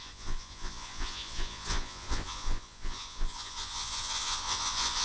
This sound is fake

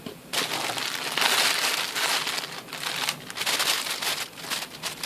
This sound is real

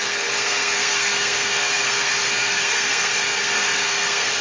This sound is fake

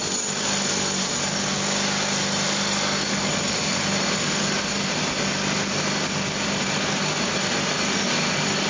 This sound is real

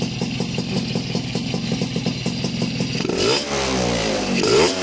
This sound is real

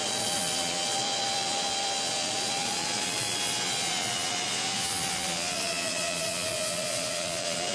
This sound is fake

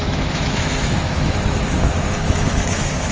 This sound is fake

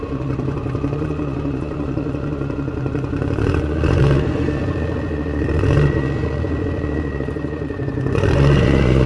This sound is fake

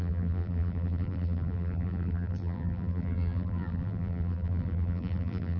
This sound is fake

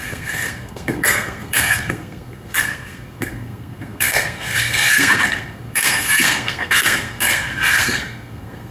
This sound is fake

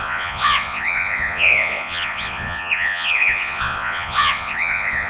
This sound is fake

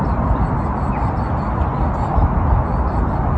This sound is real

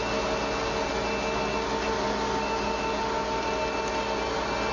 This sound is real